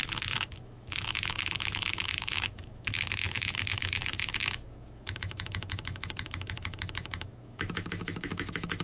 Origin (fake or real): fake